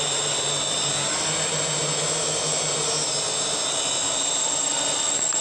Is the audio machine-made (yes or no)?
no